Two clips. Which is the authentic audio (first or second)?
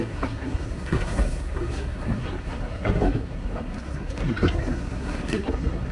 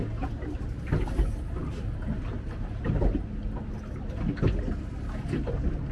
second